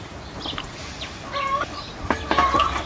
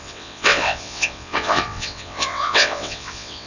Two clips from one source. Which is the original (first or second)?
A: first